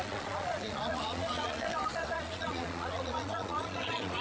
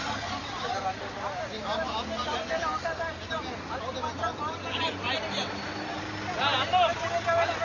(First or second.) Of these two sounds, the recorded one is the second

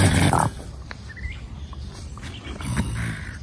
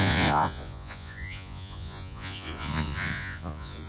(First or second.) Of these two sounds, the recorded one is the first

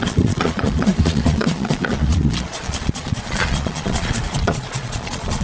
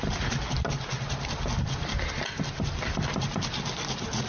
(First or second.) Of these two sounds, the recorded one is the second